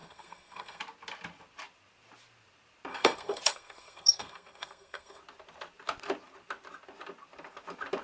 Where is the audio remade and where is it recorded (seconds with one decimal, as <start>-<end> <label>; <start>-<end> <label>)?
0.0-0.8 remade; 0.8-2.9 recorded; 2.9-5.2 remade; 5.2-8.0 recorded